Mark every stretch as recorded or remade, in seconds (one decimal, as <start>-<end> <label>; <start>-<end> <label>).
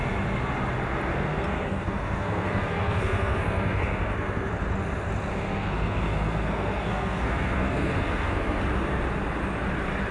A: 0.0-1.1 recorded; 1.1-4.5 remade; 4.5-5.3 recorded; 5.3-8.6 remade; 8.6-10.1 recorded